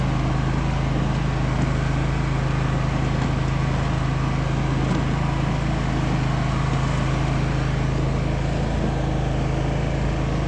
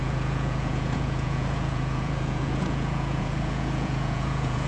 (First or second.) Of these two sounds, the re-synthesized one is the second